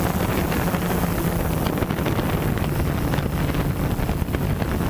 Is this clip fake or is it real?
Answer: real